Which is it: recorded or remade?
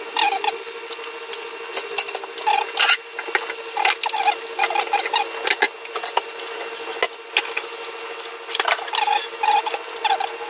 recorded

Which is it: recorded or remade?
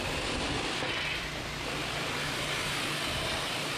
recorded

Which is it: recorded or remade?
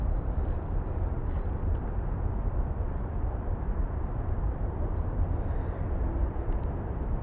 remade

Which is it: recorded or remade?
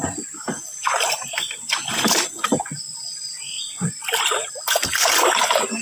recorded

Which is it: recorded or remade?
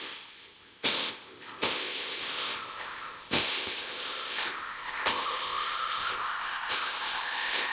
remade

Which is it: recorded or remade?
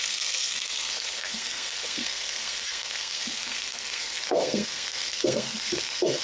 remade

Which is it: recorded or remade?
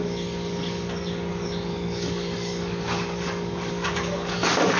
remade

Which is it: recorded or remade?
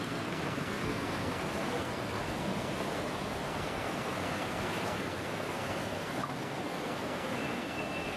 remade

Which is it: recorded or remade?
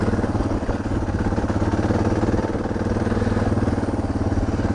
recorded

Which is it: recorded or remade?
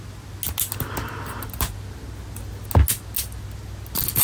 recorded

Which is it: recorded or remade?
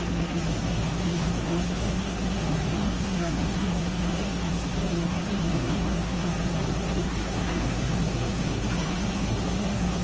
remade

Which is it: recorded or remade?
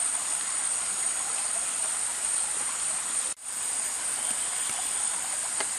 recorded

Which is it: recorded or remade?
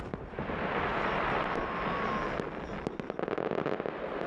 recorded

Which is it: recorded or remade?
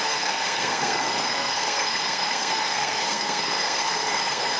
remade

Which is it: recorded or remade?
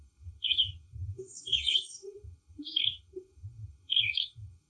remade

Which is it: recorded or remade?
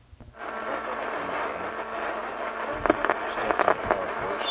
recorded